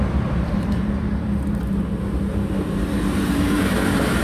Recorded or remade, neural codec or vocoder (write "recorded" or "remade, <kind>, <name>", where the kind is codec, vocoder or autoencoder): remade, vocoder, BigVGAN v2